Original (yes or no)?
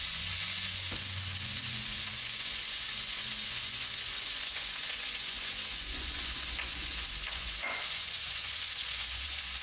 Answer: no